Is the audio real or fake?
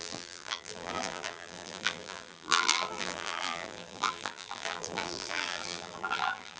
fake